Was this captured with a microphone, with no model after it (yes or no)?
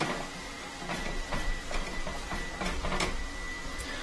yes